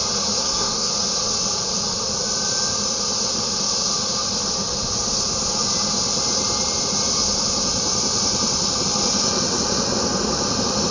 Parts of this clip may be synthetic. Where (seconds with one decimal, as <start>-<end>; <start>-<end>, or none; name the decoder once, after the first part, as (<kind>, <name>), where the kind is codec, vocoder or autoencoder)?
0.4-0.9 (codec, SNAC)